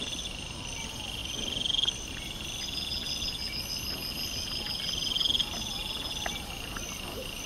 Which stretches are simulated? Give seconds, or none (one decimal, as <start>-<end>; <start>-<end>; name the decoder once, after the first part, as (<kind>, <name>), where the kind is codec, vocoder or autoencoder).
none